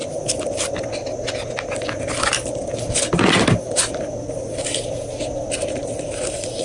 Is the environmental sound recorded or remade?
recorded